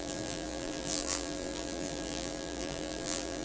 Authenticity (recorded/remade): remade